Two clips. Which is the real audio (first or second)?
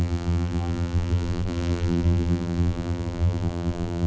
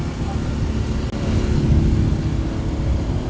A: second